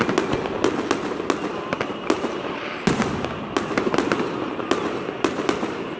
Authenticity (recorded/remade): recorded